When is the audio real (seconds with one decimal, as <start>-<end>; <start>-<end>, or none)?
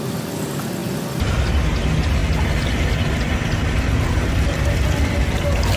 0.0-5.8